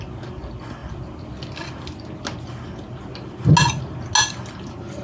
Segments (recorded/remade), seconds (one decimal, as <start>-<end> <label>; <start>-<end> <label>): 0.0-5.0 recorded